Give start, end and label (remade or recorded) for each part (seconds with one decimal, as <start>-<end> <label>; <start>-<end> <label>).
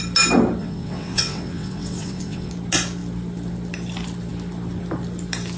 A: 0.0-0.6 recorded; 0.6-2.5 remade; 2.5-5.6 recorded